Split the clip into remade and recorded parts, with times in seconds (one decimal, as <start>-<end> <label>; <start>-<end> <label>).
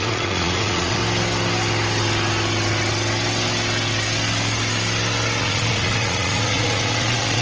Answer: 0.0-1.0 remade; 1.0-5.4 recorded; 5.4-7.4 remade